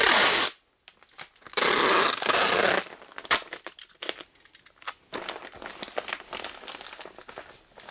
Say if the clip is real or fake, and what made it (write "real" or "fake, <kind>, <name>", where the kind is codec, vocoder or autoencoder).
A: real